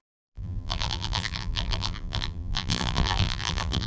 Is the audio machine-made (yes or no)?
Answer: yes